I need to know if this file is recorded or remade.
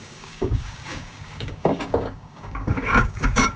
remade